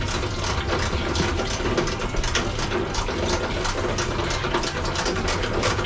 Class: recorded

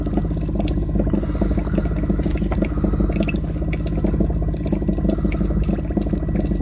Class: recorded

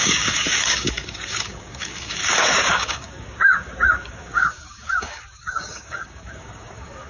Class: remade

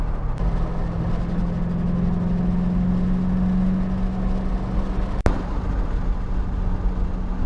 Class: recorded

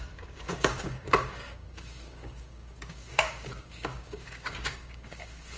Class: remade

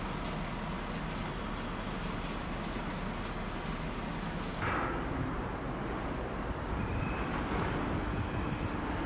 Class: recorded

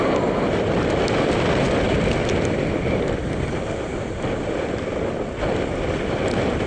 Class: recorded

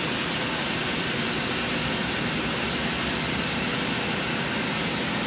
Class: recorded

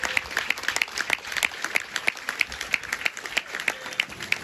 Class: recorded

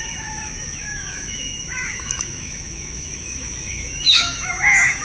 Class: remade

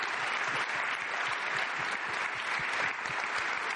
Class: recorded